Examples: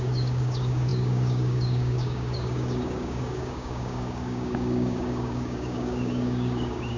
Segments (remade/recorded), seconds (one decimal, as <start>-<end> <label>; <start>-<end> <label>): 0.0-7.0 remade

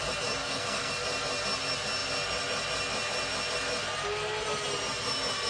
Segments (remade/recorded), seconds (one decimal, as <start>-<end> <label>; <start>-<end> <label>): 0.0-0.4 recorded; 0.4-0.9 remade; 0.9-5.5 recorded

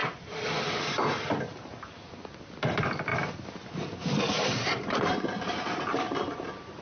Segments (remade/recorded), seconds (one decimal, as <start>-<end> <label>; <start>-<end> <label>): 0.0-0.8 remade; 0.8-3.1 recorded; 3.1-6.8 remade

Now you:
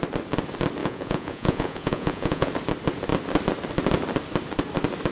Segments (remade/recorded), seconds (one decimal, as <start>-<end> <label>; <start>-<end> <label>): 0.0-0.8 recorded; 0.8-2.5 remade; 2.5-5.1 recorded

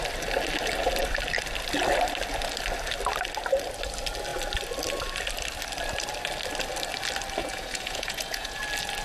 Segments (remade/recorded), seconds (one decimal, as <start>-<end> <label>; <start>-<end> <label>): 0.0-7.4 recorded; 7.4-8.6 remade; 8.6-9.0 recorded

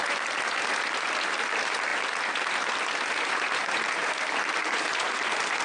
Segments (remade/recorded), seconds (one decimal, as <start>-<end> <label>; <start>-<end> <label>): 0.0-5.6 recorded